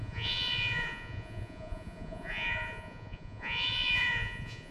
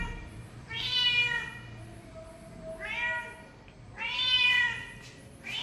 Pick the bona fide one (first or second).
second